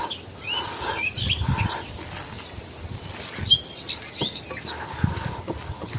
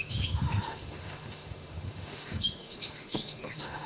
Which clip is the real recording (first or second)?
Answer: first